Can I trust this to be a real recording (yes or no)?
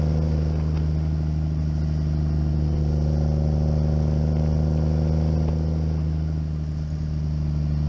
yes